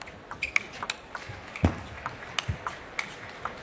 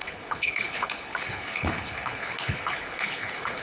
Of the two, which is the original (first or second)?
first